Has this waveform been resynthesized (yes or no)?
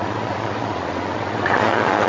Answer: yes